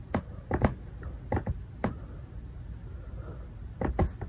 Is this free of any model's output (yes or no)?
yes